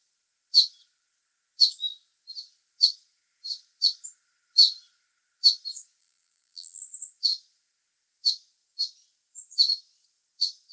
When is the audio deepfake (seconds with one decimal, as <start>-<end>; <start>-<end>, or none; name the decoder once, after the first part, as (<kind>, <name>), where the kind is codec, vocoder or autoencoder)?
6.0-6.8 (vocoder, BigVGAN v2)